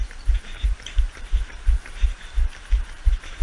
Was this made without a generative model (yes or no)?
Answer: no